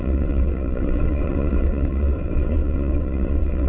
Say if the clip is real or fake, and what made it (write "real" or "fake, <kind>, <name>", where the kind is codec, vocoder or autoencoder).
fake, vocoder, WaveNeXt